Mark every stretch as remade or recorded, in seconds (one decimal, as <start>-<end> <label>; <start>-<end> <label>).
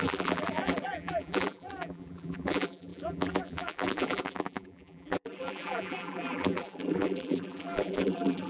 0.0-8.5 remade